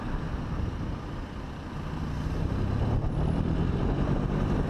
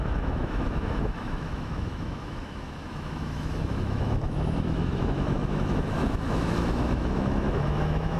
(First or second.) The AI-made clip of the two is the second